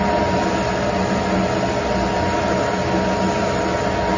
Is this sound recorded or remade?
recorded